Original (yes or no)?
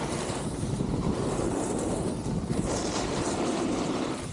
no